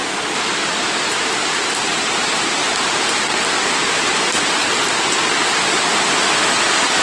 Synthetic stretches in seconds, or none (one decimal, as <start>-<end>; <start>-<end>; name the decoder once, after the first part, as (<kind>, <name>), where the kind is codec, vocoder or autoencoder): 1.9-6.0 (vocoder, BigVGAN v2)